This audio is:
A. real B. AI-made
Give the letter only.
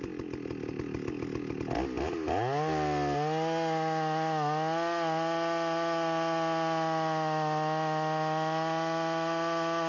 A